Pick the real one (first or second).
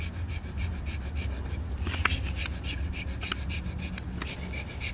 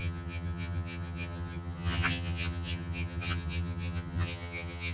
first